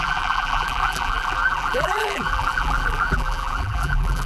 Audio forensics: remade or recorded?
remade